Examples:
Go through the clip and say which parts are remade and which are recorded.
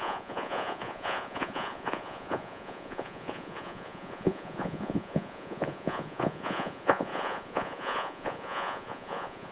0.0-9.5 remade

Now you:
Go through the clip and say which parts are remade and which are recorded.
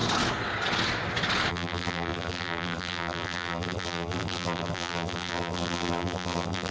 0.0-1.5 recorded; 1.5-6.7 remade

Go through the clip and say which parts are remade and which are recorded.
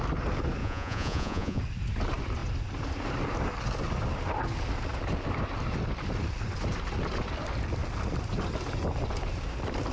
0.0-0.6 recorded; 0.6-1.6 remade; 1.6-9.9 recorded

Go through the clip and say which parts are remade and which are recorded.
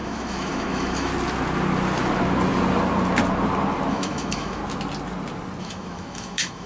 0.0-1.1 remade; 1.1-3.9 recorded; 3.9-4.6 remade; 4.6-5.6 recorded; 5.6-6.7 remade